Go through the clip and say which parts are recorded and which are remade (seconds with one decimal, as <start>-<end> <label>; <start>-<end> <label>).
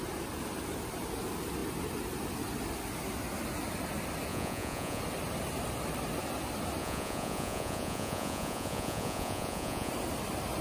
0.0-4.3 recorded; 4.3-5.0 remade; 5.0-6.8 recorded; 6.8-9.9 remade; 9.9-10.6 recorded